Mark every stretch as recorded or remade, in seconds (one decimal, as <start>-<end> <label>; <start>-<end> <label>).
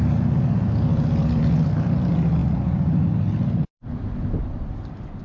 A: 0.0-0.9 recorded; 0.9-2.0 remade; 2.0-2.4 recorded; 2.4-5.2 remade